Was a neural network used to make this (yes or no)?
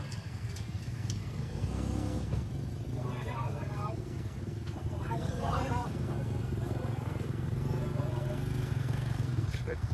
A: yes